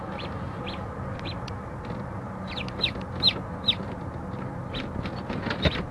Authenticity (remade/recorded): recorded